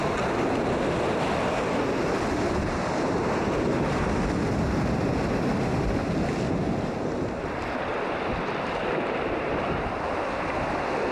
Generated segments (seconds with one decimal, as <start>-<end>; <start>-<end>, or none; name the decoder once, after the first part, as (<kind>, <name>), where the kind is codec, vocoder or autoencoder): none